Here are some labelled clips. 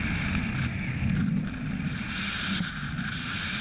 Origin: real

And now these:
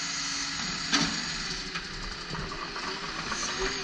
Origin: real